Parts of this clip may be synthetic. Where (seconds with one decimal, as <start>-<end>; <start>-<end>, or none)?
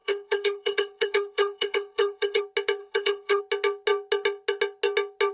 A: 0.0-2.4; 2.8-3.4